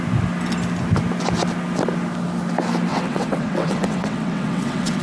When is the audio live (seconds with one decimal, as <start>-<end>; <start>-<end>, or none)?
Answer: 0.0-2.9